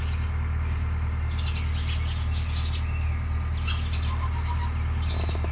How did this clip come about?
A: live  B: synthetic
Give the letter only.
A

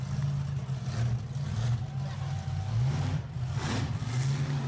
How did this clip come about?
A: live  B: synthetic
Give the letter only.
A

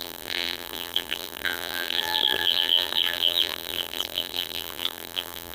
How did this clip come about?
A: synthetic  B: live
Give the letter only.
A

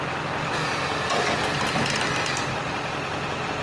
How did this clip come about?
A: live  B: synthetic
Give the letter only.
A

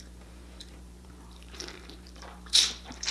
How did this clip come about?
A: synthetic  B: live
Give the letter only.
A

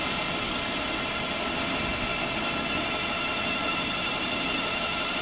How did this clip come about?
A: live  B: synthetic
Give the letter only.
A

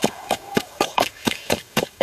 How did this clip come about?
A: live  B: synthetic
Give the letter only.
B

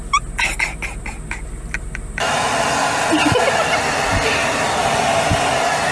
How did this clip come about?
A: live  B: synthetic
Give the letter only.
A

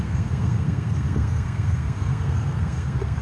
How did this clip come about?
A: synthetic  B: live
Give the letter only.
A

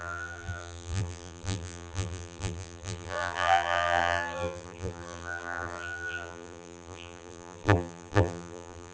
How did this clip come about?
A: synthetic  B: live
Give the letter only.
A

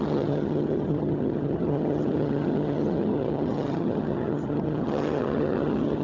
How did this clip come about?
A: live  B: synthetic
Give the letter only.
B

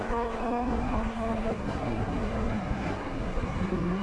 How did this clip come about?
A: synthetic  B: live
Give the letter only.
A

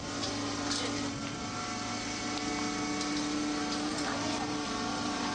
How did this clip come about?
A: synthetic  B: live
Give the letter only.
B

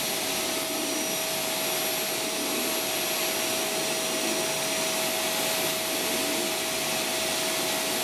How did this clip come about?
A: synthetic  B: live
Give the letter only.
B